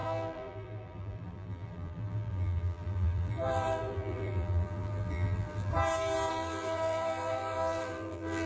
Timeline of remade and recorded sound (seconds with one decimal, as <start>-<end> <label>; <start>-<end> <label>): 0.0-5.7 remade; 5.7-6.3 recorded; 6.3-8.5 remade